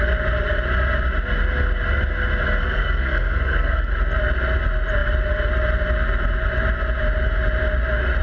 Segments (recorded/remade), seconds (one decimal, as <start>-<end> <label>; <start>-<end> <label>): 0.0-2.6 recorded; 2.6-3.9 remade; 3.9-8.2 recorded

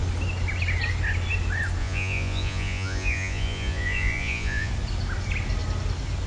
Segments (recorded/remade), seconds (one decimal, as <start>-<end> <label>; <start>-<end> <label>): 0.0-1.8 recorded; 1.8-4.7 remade; 4.7-6.3 recorded